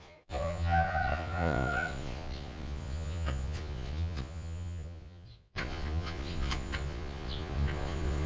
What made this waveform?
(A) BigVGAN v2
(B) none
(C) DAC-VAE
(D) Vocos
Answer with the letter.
D